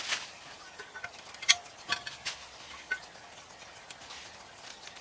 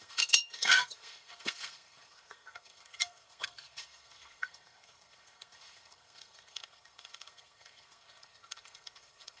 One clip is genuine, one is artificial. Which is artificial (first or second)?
second